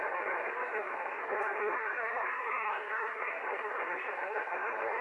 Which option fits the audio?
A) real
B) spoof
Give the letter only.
B